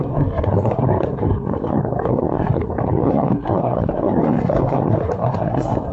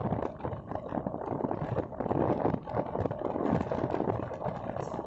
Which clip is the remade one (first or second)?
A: first